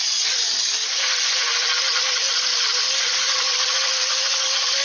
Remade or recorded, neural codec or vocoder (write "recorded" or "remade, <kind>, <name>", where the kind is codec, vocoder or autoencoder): recorded